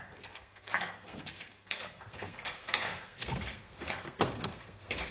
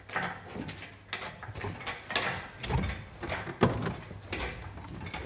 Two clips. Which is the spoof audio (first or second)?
first